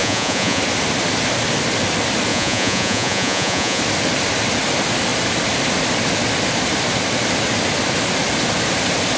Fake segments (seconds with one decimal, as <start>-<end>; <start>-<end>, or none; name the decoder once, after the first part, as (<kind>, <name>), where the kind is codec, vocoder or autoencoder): 0.0-0.6 (vocoder, Vocos); 2.3-3.8